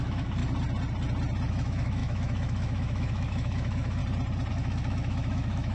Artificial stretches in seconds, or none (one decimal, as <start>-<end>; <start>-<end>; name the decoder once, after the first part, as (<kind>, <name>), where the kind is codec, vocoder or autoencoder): 0.0-0.4 (autoencoder, DAC-VAE); 1.5-4.0; 4.5-5.7